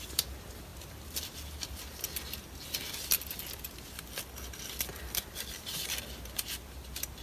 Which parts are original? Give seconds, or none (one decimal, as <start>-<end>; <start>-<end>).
0.0-7.2